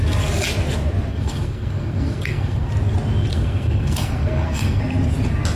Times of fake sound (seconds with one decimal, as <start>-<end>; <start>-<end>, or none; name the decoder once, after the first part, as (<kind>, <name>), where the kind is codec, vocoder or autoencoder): 1.1-2.7 (codec, SNAC); 3.3-4.8